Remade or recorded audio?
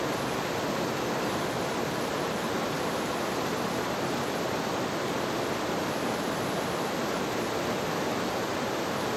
recorded